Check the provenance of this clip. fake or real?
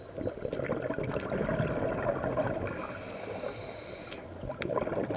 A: real